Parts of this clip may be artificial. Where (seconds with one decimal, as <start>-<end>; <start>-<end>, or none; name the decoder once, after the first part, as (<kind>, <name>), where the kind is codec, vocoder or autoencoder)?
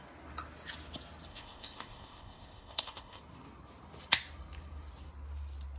1.3-3.2 (codec, ZipCodec)